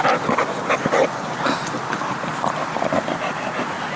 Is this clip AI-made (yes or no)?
no